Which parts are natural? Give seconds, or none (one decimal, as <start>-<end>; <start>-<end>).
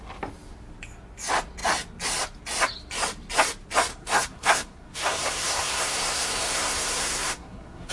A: 0.0-3.9